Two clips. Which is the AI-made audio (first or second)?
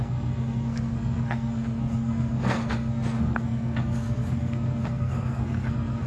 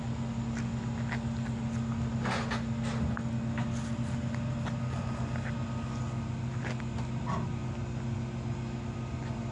first